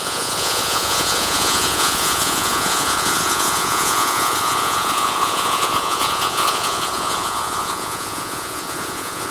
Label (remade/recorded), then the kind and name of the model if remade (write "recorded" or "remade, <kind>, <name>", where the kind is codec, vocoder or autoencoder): remade, vocoder, Vocos